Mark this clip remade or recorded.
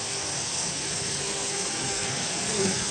remade